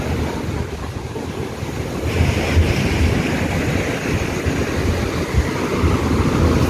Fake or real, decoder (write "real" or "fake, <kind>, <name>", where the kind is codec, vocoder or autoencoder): real